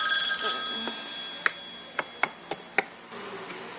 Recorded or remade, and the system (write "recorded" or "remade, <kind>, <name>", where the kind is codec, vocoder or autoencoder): recorded